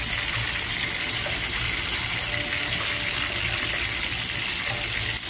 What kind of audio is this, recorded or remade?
recorded